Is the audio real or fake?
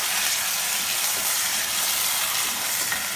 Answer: real